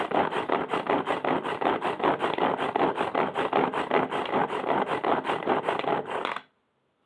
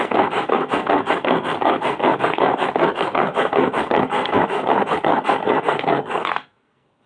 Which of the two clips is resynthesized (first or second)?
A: second